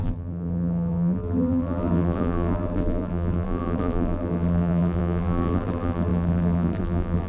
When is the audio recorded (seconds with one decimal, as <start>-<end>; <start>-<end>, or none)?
none